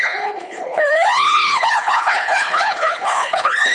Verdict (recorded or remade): remade